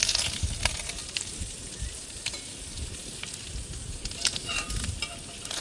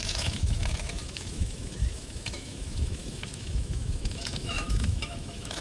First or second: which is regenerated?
second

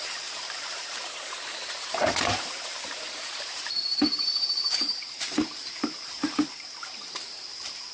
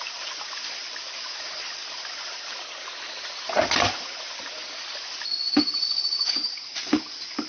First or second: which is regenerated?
first